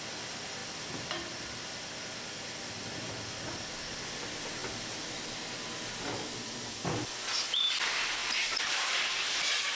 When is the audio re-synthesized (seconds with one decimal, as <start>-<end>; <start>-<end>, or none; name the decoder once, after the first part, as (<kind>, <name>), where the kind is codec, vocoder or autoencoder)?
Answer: none

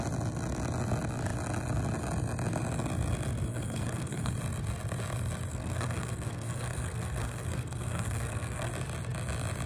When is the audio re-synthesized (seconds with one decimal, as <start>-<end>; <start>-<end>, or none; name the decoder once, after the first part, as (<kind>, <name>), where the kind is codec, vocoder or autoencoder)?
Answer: 3.5-4.3 (codec, SNAC); 5.5-8.7

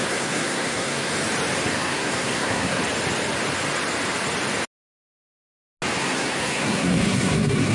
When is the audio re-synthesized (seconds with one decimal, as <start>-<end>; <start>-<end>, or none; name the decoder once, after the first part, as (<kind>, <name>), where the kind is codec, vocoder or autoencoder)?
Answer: 0.0-1.1 (codec, SNAC); 1.7-2.8; 6.0-7.7